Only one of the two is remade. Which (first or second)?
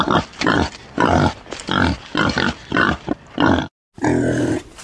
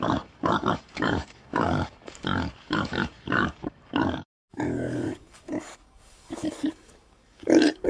second